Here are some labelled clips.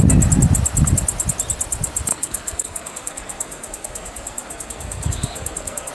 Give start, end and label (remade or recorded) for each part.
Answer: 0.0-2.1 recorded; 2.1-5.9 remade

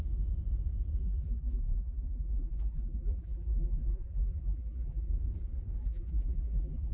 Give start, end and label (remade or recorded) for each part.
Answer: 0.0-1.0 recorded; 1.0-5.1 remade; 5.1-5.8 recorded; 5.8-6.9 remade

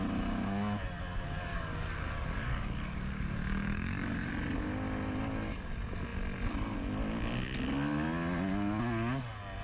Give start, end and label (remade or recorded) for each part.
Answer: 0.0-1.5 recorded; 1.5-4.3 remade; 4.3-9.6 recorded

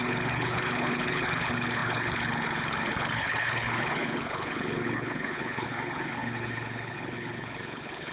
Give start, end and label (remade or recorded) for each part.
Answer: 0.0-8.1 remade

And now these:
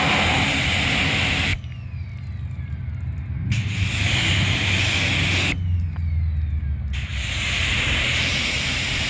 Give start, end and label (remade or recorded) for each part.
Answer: 0.0-7.6 recorded; 7.6-9.1 remade

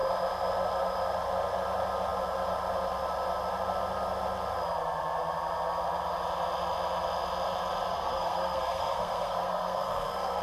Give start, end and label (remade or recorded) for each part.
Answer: 0.0-7.9 recorded; 7.9-10.4 remade

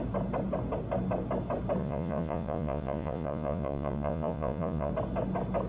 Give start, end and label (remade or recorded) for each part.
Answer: 0.0-1.8 recorded; 1.8-4.9 remade; 4.9-5.7 recorded